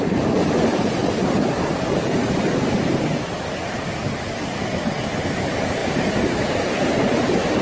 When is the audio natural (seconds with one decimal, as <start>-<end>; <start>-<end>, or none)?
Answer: 1.0-5.2